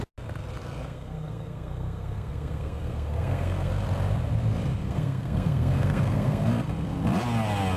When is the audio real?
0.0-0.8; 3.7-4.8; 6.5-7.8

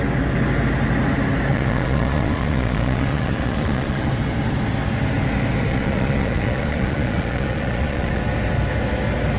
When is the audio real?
0.0-1.5; 4.1-5.7; 8.2-9.4

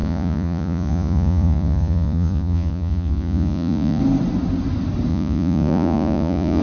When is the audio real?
4.0-5.1

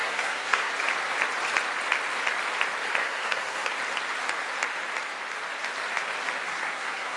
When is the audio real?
0.7-3.0; 3.7-6.5

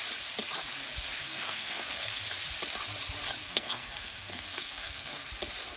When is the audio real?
0.0-1.2; 2.2-3.4; 5.3-5.8

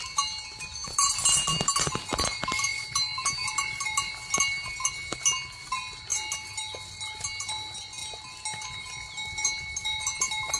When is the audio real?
0.0-10.6

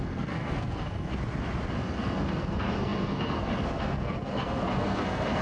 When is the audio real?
1.1-1.8

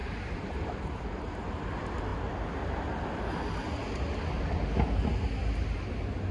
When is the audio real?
0.0-6.3